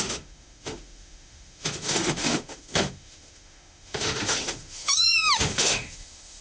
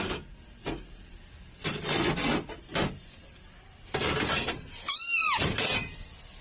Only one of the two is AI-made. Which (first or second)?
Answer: first